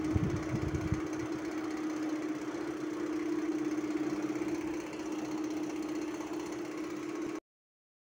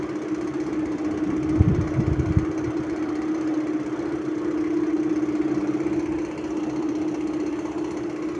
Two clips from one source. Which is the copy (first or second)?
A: second